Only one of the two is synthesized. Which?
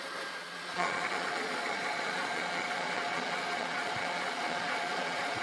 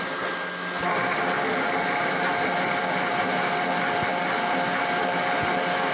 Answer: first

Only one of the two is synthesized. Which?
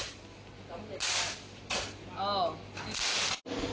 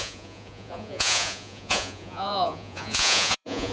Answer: second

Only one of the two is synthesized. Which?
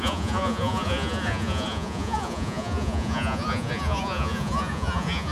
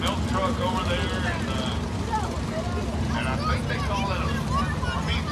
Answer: first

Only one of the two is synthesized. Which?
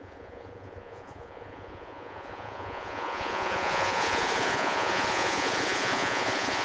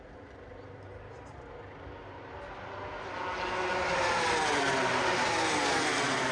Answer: first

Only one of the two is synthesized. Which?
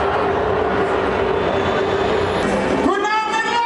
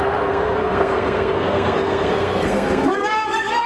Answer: second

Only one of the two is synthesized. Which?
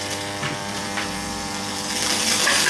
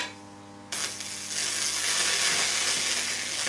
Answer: first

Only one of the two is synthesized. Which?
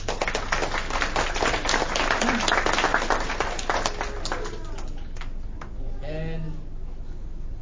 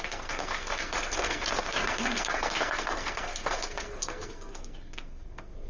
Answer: second